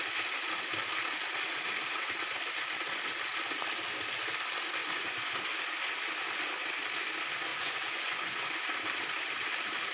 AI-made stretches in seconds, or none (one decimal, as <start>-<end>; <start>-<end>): 4.8-5.3; 7.5-8.6